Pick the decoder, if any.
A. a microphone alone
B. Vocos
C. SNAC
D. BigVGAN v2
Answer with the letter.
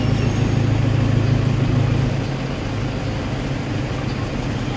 A